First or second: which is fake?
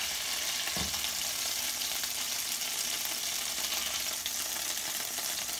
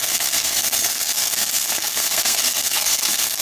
second